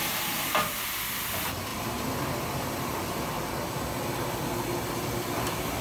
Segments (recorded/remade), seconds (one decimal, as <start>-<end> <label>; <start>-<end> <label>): 0.0-5.8 recorded